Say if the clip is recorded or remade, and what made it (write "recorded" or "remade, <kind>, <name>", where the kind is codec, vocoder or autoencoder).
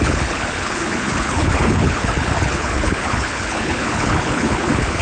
remade, codec, HILCodec